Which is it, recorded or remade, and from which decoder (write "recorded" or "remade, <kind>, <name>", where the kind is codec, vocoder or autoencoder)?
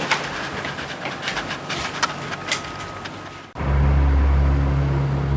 recorded